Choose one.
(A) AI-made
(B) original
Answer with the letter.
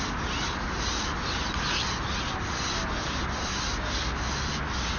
B